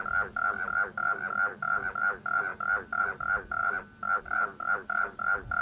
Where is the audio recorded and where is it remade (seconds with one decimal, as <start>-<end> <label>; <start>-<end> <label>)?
0.0-5.6 recorded